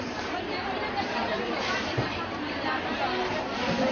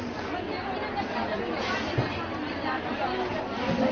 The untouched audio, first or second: second